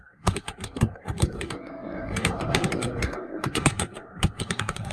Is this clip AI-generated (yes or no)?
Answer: yes